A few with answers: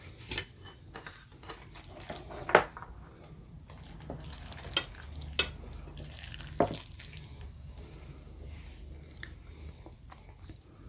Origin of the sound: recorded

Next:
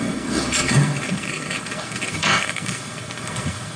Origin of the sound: remade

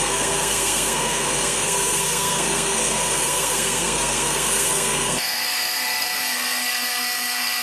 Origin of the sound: remade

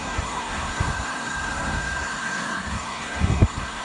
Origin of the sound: remade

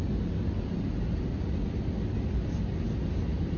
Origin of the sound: recorded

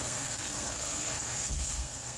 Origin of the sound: remade